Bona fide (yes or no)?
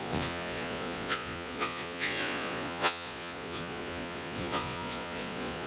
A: no